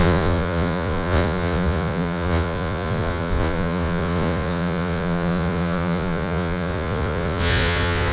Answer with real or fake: fake